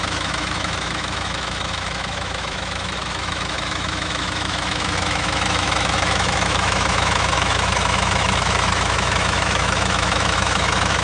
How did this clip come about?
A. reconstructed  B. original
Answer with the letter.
A